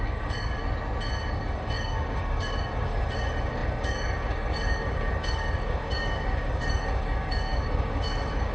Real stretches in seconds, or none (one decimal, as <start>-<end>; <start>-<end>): 0.6-1.3